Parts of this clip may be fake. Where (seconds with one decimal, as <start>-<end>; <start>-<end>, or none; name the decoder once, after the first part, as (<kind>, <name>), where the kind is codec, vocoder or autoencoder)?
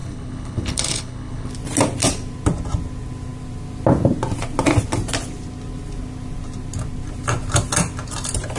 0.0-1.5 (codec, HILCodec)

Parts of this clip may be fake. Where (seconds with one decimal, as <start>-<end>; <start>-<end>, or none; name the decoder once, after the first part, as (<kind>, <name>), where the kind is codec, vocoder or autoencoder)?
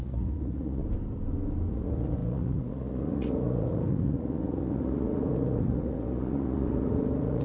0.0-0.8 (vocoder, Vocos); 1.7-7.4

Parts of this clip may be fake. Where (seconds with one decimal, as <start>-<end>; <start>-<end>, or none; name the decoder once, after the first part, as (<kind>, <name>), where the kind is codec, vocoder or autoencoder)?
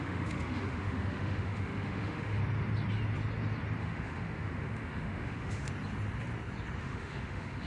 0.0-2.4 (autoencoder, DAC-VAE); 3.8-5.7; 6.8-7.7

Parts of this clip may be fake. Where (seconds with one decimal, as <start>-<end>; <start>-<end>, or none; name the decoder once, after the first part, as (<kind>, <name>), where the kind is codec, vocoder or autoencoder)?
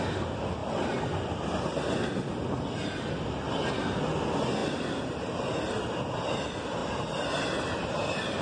none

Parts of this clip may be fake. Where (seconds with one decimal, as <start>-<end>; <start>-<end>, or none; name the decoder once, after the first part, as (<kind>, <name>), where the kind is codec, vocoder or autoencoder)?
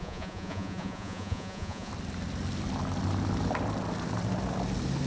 0.0-1.9 (vocoder, Vocos)